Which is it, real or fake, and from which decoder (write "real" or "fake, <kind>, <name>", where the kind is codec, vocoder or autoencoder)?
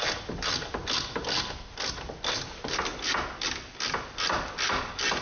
real